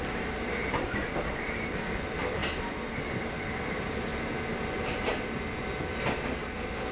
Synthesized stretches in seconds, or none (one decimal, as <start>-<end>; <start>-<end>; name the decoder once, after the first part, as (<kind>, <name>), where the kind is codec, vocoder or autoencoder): 0.0-2.4 (vocoder, BigVGAN v2); 3.1-4.1; 6.4-6.9